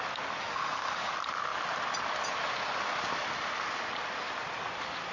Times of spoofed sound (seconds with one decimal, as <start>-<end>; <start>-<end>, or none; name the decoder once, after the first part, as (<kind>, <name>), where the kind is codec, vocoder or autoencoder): 0.4-1.1 (autoencoder, DAC-VAE)

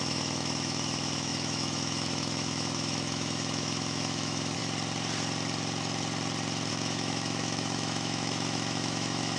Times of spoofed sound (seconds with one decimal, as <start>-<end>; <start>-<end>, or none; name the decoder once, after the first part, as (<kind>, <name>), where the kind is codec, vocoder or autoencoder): 0.0-4.6 (autoencoder, DAC-VAE); 6.7-9.4

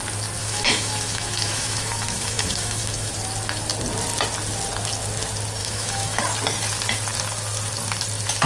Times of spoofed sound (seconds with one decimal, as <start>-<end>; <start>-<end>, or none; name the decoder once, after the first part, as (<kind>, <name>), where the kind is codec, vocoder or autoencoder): 0.4-3.1 (autoencoder, DAC-VAE); 5.6-6.2

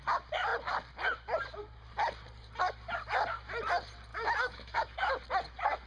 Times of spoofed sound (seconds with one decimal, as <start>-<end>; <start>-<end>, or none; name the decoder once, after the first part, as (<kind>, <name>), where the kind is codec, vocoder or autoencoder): 4.1-5.1 (autoencoder, DAC-VAE)

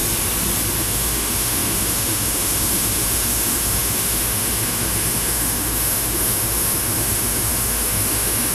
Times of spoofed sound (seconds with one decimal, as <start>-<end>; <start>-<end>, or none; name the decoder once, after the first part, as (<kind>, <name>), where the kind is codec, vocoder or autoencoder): 0.8-8.5 (autoencoder, DAC-VAE)

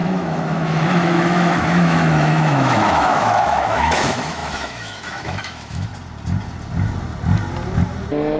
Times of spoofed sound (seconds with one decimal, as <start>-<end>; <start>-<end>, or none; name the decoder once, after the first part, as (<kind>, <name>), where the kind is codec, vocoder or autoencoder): 0.0-5.9 (autoencoder, DAC-VAE)